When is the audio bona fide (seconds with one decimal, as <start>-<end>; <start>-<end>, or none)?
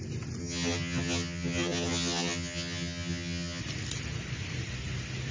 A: 0.0-0.4; 3.6-5.3